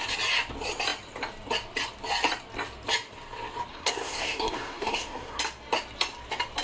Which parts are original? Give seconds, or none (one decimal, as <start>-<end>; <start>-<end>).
0.0-3.7; 5.4-6.6